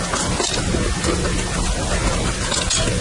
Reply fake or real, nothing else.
real